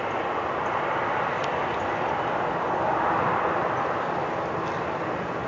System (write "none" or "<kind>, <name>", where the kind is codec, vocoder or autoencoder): none